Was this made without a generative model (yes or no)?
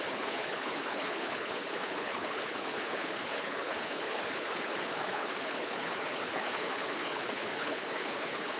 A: no